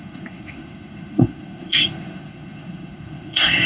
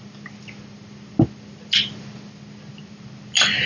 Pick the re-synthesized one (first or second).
first